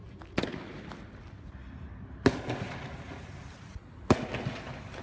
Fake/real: real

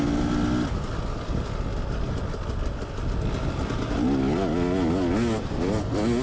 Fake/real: real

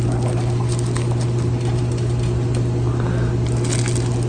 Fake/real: real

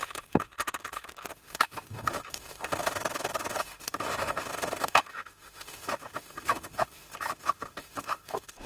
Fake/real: fake